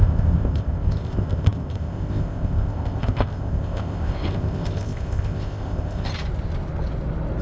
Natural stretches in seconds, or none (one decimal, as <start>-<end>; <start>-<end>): 6.1-7.4